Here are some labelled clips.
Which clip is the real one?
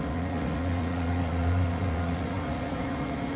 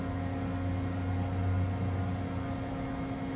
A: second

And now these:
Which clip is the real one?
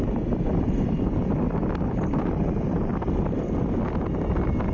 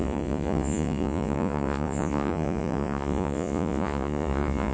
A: first